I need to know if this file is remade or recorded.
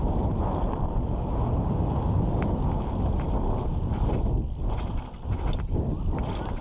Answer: recorded